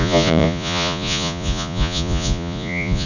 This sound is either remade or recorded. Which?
remade